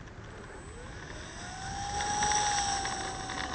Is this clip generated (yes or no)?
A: no